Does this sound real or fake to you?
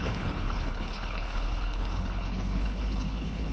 fake